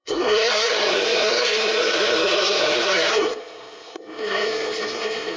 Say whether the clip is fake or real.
fake